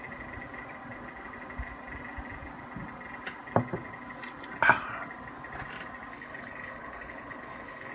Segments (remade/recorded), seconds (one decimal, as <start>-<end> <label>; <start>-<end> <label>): 0.0-6.1 recorded; 6.1-7.9 remade